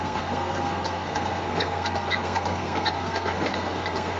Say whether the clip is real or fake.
fake